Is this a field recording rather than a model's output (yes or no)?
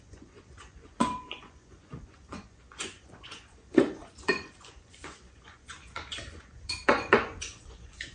no